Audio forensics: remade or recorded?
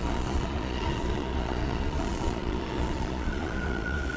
remade